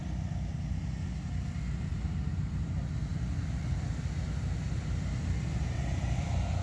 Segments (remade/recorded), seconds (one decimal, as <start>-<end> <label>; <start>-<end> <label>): 0.0-1.9 recorded; 1.9-2.6 remade; 2.6-6.6 recorded